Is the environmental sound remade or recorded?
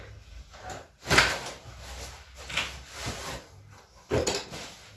recorded